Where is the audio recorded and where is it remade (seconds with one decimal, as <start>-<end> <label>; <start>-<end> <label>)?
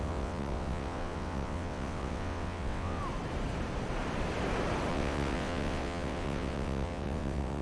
0.0-3.0 remade; 3.0-4.9 recorded; 4.9-7.6 remade